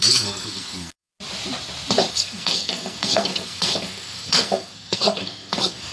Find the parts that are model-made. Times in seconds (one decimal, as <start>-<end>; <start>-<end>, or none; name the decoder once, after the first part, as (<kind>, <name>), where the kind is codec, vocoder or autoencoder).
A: 0.0-1.1 (codec, SNAC); 2.1-5.9